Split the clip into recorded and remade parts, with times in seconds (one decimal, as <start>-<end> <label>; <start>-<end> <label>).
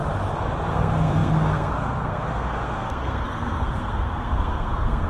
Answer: 0.0-0.7 recorded; 0.7-5.1 remade